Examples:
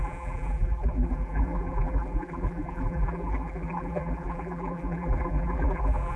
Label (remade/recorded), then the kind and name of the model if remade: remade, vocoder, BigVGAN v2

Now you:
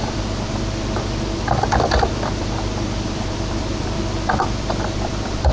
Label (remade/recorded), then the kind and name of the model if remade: remade, vocoder, BigVGAN v2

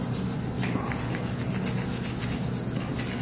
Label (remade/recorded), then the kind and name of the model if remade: recorded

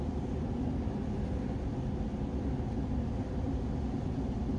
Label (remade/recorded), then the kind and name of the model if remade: recorded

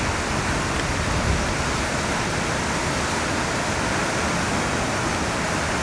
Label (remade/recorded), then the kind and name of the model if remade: recorded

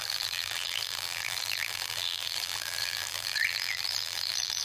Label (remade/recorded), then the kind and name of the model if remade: remade, vocoder, BigVGAN v2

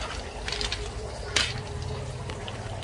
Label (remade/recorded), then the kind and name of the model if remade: remade, vocoder, BigVGAN v2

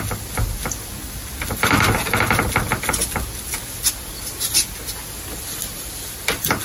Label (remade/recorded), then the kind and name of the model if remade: recorded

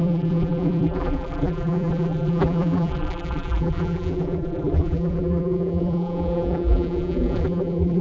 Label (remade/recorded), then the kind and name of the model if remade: remade, vocoder, BigVGAN v2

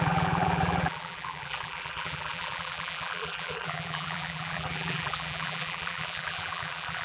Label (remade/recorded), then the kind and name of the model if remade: remade, vocoder, BigVGAN v2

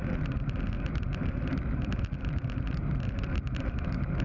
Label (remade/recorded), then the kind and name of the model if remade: recorded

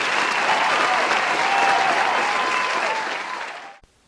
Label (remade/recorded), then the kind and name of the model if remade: recorded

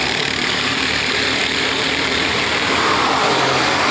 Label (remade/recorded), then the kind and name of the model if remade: remade, vocoder, BigVGAN v2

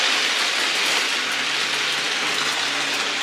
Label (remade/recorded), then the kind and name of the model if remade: recorded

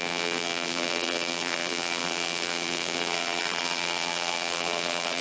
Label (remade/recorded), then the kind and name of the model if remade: remade, vocoder, BigVGAN v2